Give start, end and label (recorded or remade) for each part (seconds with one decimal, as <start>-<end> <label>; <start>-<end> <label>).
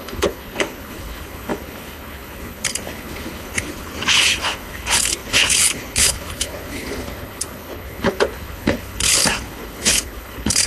0.0-10.7 remade